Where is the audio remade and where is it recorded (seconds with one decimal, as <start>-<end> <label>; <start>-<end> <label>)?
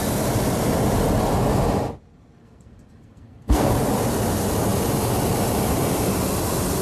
0.0-2.4 recorded; 2.4-3.7 remade; 3.7-6.8 recorded